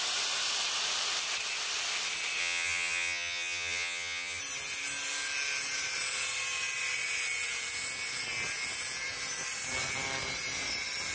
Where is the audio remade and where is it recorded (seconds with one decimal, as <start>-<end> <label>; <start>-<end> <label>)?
0.0-2.4 recorded; 2.4-4.4 remade; 4.4-11.1 recorded